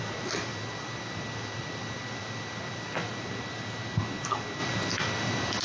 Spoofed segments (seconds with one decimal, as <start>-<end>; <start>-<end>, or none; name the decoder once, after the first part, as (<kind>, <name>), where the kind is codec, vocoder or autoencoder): 0.5-3.1 (vocoder, BigVGAN v2); 4.6-5.6